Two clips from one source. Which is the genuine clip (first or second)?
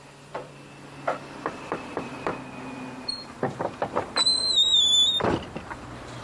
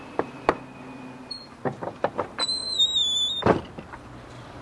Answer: second